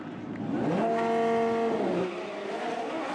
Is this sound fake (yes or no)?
no